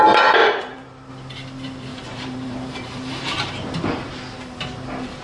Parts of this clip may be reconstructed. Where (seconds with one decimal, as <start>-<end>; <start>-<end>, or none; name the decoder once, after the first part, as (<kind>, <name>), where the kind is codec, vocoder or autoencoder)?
0.4-1.1 (vocoder, BigVGAN v2); 1.9-3.5